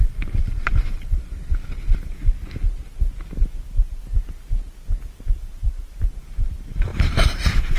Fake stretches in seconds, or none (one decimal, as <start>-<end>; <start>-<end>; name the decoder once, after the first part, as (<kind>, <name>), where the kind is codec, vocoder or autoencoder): 0.0-1.2 (vocoder, BigVGAN v2); 5.6-7.8